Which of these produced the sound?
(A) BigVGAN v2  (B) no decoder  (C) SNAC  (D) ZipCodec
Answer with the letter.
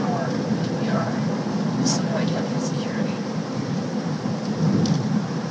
B